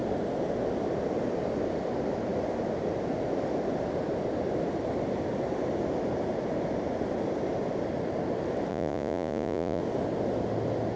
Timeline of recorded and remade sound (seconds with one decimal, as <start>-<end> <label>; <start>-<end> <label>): 0.0-8.7 recorded; 8.7-9.8 remade; 9.8-11.0 recorded